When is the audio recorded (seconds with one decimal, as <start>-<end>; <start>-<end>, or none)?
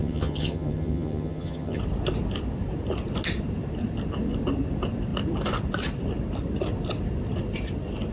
1.8-8.1